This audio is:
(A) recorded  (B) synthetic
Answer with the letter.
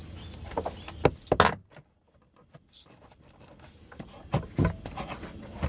A